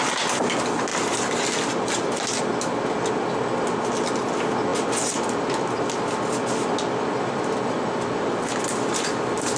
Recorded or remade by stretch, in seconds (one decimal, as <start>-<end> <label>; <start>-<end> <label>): 0.0-9.6 recorded